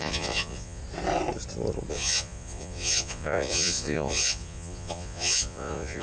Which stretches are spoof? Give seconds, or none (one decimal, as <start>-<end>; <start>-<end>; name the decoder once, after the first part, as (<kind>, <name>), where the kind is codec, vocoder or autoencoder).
0.0-0.8 (vocoder, Vocos); 1.9-6.0